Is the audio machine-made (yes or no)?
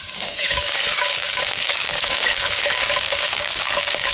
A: yes